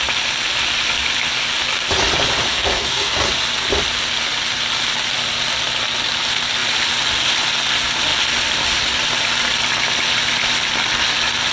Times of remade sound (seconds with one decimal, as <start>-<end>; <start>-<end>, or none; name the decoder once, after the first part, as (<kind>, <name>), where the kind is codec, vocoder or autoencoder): 2.5-3.1 (codec, SNAC)